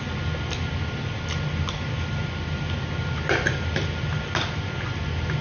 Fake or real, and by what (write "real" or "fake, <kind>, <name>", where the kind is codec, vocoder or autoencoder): real